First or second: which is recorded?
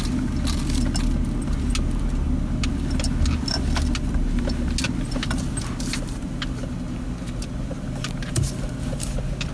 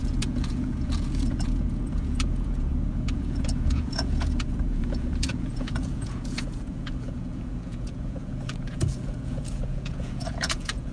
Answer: first